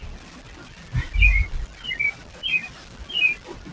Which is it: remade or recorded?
recorded